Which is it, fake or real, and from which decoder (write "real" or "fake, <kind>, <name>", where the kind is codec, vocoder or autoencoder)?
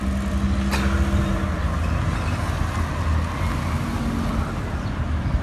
real